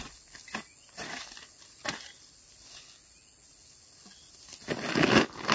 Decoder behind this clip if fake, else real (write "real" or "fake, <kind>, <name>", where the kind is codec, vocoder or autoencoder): real